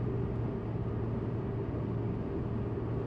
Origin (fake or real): real